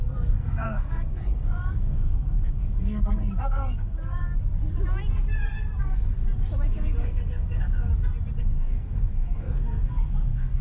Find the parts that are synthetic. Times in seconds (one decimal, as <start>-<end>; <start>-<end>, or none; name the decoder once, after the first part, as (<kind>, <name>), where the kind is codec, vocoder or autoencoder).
0.0-4.3 (codec, SNAC); 5.8-6.2; 7.0-7.9; 8.4-10.6